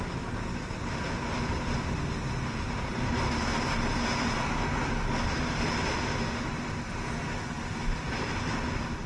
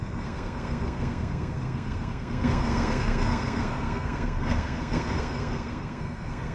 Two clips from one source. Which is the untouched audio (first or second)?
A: first